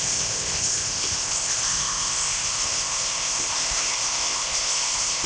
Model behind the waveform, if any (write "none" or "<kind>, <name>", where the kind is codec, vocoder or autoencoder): codec, ZipCodec